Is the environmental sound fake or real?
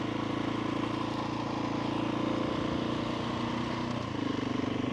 real